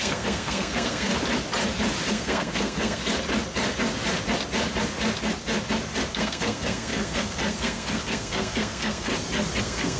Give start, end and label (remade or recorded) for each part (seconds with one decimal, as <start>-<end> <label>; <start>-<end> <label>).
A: 0.0-1.1 remade; 1.1-2.1 recorded; 2.1-3.0 remade; 3.0-6.1 recorded; 6.1-9.1 remade; 9.1-9.6 recorded; 9.6-10.0 remade